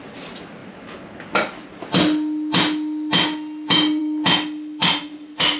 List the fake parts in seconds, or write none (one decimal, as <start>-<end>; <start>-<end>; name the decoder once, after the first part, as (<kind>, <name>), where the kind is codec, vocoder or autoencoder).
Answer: none